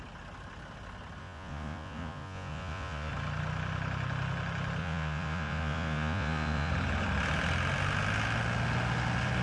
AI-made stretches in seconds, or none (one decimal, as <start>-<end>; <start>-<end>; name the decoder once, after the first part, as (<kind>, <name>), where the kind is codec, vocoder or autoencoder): 1.2-3.1 (vocoder, Vocos); 4.8-6.7